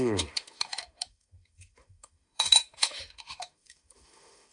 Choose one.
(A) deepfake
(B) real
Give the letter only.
A